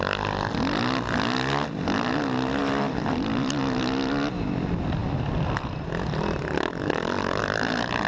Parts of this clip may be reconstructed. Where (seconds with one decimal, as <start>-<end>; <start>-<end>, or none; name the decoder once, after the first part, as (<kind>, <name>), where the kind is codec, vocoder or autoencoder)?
2.6-3.6 (vocoder, BigVGAN v2)